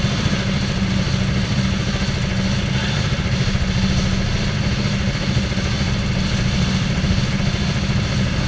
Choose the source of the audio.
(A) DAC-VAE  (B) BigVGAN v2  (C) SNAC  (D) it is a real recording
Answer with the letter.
D